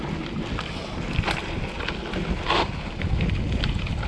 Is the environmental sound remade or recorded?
recorded